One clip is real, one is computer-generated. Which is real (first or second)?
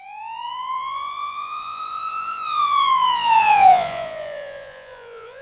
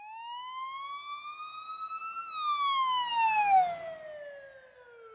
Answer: second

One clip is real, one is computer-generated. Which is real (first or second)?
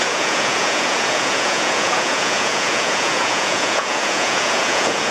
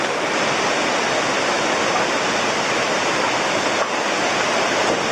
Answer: second